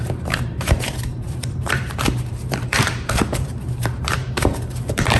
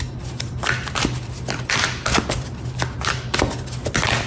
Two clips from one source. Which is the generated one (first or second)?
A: first